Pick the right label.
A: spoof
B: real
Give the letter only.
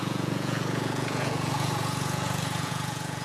A